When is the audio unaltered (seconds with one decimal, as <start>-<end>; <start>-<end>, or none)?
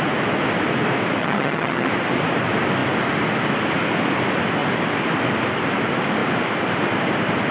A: 0.0-1.2; 1.9-7.5